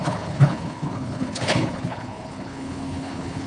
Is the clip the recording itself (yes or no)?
no